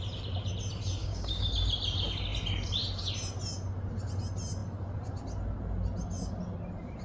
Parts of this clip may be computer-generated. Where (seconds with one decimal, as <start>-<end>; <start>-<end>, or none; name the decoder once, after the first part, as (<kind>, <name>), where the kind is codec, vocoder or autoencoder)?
1.0-1.5 (codec, DAC)